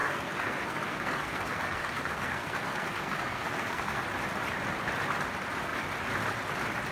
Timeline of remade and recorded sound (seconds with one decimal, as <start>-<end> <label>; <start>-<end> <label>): 0.0-4.0 remade; 4.0-6.9 recorded